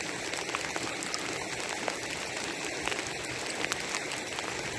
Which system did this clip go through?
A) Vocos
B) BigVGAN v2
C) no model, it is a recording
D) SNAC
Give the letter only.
C